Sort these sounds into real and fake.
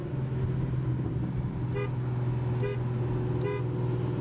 real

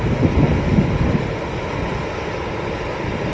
real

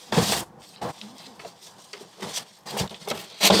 real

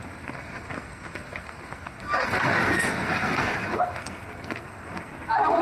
fake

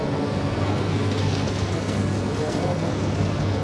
fake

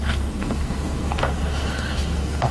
fake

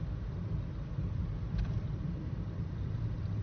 fake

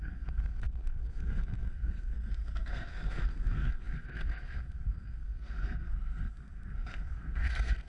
fake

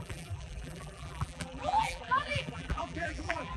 fake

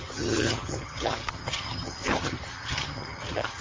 fake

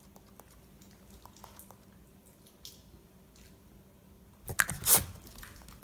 real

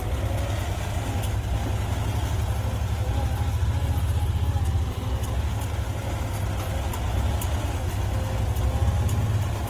real